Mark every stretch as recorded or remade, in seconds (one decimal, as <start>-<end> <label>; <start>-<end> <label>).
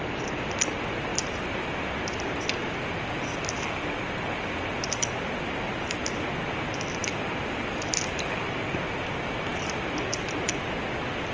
0.0-11.3 recorded